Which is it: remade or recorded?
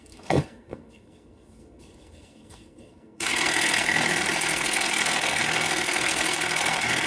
remade